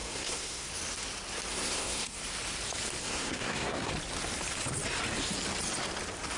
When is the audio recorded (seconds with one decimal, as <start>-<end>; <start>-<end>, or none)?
0.7-1.5; 2.2-3.0; 3.9-6.4